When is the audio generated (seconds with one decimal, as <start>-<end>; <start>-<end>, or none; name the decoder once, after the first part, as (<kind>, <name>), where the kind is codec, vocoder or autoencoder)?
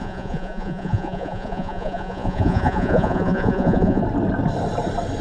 0.0-4.0 (vocoder, Vocos)